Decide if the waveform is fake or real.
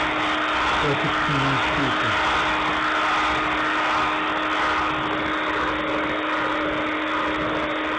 real